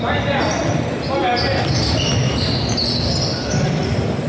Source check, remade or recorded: recorded